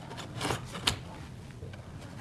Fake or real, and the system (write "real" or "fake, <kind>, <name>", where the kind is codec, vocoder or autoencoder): real